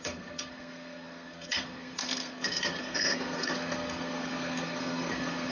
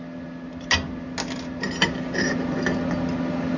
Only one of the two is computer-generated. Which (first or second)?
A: first